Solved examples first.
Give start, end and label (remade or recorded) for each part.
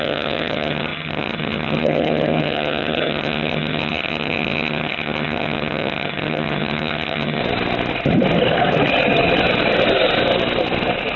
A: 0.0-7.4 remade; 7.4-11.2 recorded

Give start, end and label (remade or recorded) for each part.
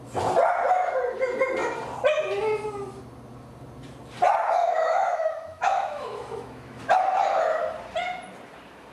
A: 0.0-4.6 recorded; 4.6-6.8 remade; 6.8-8.9 recorded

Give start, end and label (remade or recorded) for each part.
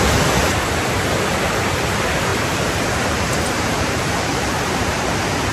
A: 0.0-2.3 recorded; 2.3-5.1 remade; 5.1-5.5 recorded